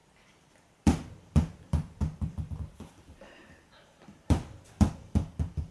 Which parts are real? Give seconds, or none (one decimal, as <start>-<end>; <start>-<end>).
none